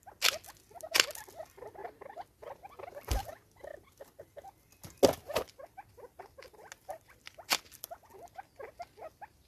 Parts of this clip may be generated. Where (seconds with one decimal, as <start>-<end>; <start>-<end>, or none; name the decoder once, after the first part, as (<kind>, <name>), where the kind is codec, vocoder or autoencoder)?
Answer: none